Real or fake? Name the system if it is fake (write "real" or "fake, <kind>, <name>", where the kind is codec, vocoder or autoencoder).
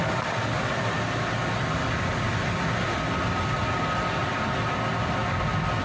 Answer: real